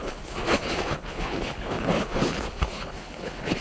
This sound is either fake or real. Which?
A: fake